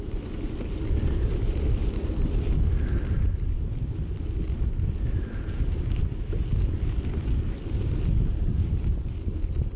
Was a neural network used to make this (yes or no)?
no